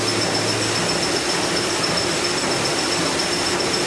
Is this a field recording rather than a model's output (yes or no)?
yes